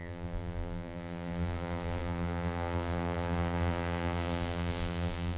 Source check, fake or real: fake